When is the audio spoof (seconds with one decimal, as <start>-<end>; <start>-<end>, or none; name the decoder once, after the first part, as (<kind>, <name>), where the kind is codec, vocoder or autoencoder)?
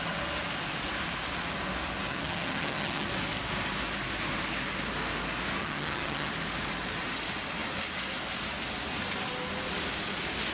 2.1-3.1 (vocoder, HiFi-GAN); 5.6-6.3